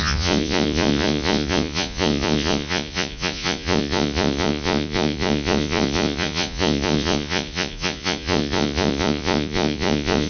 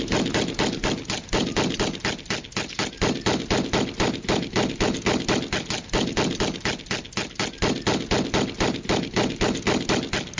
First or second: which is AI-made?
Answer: first